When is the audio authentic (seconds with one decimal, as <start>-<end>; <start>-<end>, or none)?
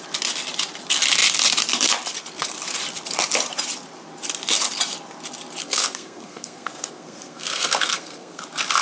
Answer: 0.0-5.6; 8.4-8.8